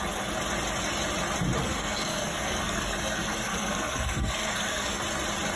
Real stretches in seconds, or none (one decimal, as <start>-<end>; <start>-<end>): 0.0-1.6; 5.0-5.6